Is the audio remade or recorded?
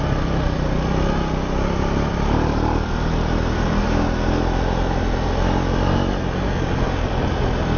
recorded